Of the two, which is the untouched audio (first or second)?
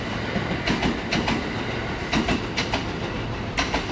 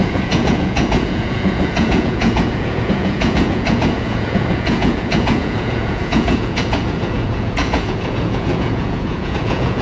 first